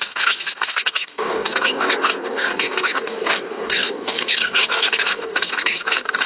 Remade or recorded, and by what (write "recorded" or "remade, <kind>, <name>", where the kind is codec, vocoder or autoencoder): remade, codec, DAC